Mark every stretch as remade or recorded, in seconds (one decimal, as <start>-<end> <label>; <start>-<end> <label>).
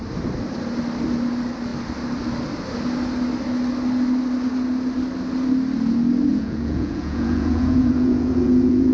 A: 0.0-6.3 recorded; 6.3-8.9 remade